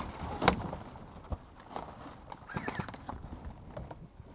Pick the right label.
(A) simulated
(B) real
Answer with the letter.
B